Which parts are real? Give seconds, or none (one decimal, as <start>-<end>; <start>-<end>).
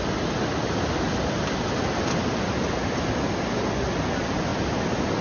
0.0-5.2